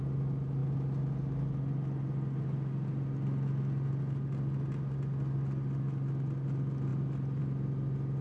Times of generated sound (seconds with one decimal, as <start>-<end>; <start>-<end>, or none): none